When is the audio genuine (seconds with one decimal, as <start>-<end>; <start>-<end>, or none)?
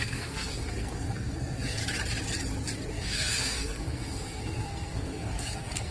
1.8-2.9